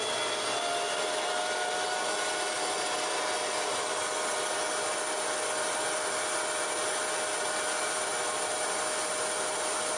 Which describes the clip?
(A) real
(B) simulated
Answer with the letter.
A